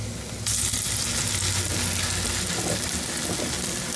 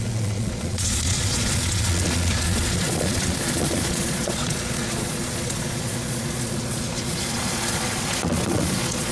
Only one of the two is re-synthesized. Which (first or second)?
second